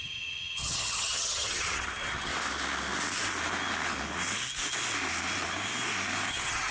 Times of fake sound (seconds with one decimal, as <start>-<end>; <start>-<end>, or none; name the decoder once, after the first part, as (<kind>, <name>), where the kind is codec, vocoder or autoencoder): 0.0-2.3 (vocoder, HiFi-GAN); 6.3-6.7